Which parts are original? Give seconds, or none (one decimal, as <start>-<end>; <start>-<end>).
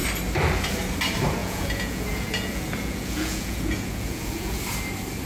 0.0-1.4; 4.6-5.3